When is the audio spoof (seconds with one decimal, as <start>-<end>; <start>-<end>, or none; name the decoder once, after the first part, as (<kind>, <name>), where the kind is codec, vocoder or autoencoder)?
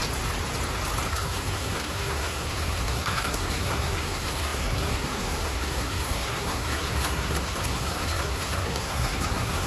1.1-9.7 (codec, SNAC)